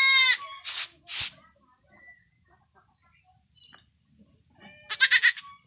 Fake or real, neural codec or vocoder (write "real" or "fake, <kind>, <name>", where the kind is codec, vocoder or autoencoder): real